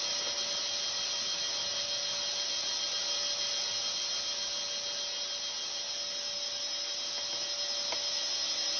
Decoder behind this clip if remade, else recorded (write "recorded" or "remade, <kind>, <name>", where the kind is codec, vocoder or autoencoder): recorded